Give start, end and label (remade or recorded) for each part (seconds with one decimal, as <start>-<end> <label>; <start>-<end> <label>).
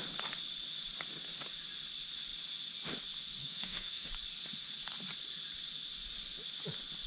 0.0-3.4 recorded; 3.4-4.1 remade; 4.1-7.1 recorded